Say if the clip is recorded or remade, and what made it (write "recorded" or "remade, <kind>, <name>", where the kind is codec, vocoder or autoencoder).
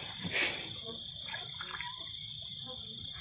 remade, vocoder, BigVGAN v2